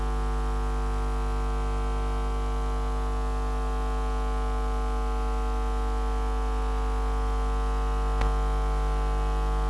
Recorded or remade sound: recorded